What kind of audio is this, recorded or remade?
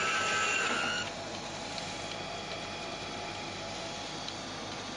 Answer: recorded